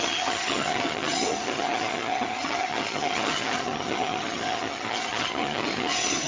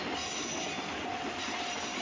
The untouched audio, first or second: second